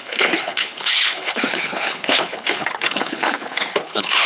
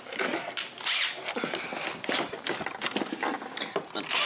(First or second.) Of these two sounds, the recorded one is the second